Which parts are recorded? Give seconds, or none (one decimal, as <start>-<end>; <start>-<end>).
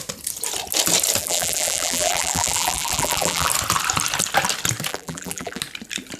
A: 0.0-1.2; 3.5-4.9; 5.6-6.2